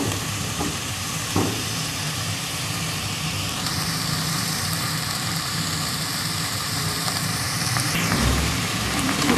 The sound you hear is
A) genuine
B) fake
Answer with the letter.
B